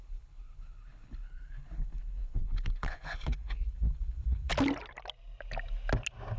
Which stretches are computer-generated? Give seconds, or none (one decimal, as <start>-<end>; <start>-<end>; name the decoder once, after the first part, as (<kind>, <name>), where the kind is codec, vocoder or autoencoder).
0.0-4.5 (codec, HILCodec)

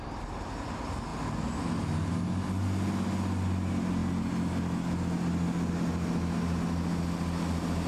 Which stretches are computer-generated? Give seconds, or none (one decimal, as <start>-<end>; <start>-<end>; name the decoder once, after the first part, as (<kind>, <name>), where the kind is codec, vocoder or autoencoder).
none

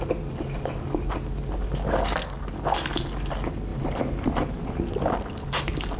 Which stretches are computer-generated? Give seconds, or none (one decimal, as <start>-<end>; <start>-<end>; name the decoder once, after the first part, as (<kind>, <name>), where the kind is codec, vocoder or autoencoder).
3.7-4.8 (vocoder, BigVGAN v2)